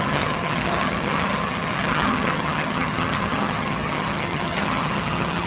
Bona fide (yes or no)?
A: no